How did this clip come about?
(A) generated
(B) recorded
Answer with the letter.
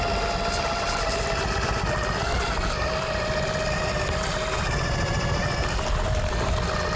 B